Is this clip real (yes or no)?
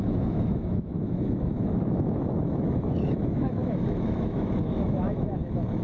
no